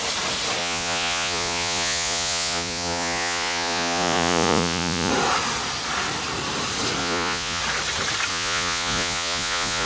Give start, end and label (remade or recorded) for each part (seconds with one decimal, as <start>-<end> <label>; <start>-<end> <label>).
0.0-0.6 recorded; 0.6-5.1 remade; 5.1-7.0 recorded; 7.0-7.6 remade; 7.6-8.3 recorded; 8.3-9.9 remade